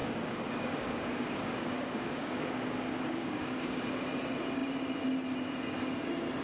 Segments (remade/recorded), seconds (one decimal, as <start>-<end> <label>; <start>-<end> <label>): 0.0-3.8 remade; 3.8-6.4 recorded